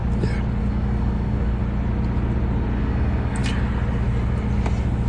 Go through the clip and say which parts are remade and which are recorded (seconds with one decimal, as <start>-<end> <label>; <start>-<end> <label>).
0.0-0.6 recorded; 0.6-1.6 remade; 1.6-2.8 recorded; 2.8-3.4 remade; 3.4-5.1 recorded